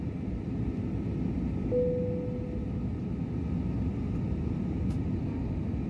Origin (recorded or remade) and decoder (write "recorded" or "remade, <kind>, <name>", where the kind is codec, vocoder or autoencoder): recorded